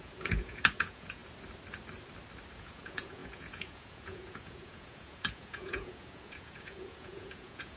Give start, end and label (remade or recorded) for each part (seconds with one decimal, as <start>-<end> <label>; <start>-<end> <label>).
0.0-1.2 remade; 1.2-2.5 recorded; 2.5-7.8 remade